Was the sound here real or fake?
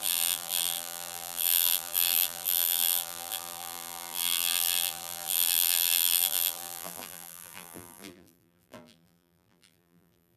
fake